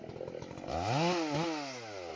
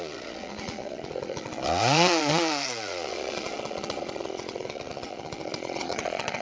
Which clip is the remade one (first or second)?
second